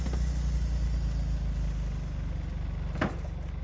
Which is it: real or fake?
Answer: real